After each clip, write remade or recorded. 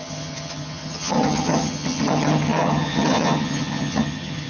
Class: remade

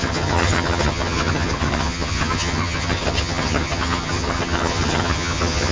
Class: remade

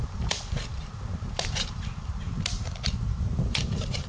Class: remade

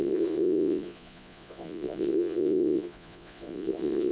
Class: remade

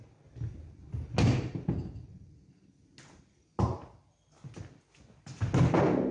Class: recorded